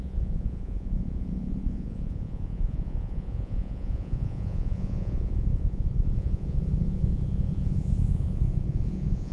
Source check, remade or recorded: remade